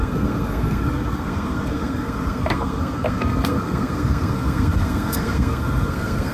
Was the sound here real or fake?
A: fake